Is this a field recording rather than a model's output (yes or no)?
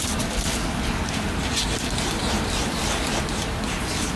yes